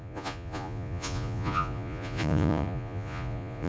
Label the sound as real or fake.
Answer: fake